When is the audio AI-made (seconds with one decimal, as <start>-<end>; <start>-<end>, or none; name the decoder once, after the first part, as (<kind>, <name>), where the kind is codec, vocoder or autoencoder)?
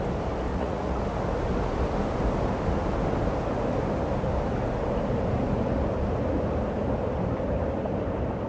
0.5-1.0 (vocoder, Vocos)